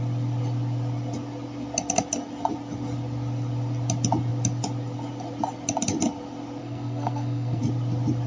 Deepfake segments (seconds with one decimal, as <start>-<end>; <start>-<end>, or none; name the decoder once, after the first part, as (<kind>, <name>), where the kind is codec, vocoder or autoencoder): 6.6-7.6 (codec, SNAC)